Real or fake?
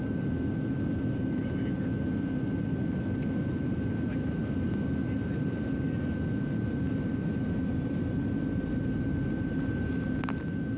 real